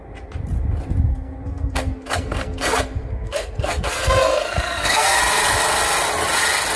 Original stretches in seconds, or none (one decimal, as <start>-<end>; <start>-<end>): 0.0-1.1; 5.2-6.8